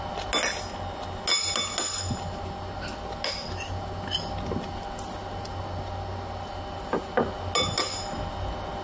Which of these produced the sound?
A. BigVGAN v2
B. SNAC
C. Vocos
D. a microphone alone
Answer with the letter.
D